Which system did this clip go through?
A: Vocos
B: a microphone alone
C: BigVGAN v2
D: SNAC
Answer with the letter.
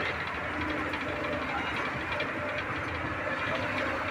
B